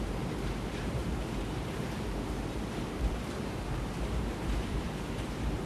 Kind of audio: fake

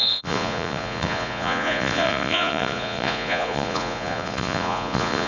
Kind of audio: fake